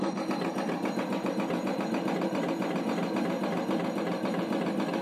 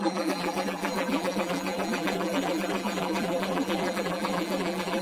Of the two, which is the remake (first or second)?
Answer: second